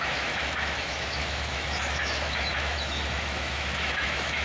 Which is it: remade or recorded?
remade